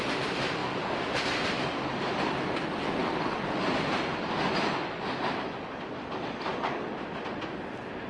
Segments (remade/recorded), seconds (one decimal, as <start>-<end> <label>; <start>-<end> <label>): 0.0-8.1 recorded